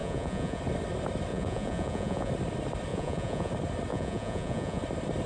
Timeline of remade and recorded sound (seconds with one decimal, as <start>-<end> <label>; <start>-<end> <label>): 0.0-0.6 remade; 0.6-1.3 recorded; 1.3-2.3 remade; 2.3-2.9 recorded; 2.9-3.5 remade; 3.5-3.9 recorded; 3.9-4.8 remade; 4.8-5.3 recorded